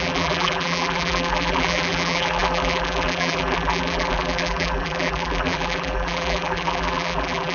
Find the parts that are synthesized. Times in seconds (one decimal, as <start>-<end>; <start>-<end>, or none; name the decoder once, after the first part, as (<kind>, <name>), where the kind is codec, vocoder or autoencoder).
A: 0.0-7.5 (vocoder, BigVGAN v2)